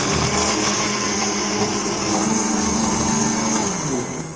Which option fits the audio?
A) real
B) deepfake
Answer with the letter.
B